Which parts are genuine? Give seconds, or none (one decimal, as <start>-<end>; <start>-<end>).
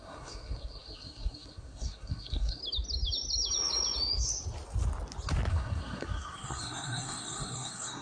2.6-5.5